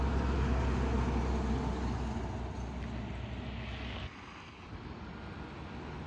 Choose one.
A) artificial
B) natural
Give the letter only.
B